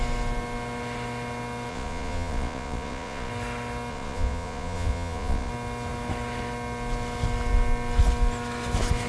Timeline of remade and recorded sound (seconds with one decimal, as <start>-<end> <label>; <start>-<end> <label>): 0.0-1.7 recorded; 1.7-3.3 remade; 3.3-3.9 recorded; 3.9-5.5 remade; 5.5-9.1 recorded